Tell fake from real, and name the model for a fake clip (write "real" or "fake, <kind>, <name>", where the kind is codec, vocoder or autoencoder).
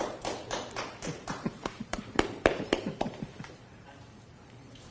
fake, vocoder, BigVGAN v2